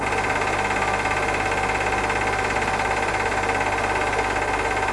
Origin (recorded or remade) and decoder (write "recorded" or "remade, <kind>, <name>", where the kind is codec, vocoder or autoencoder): recorded